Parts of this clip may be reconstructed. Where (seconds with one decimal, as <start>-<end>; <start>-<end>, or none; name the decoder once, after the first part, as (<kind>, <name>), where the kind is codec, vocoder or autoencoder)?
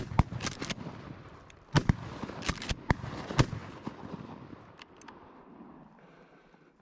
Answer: none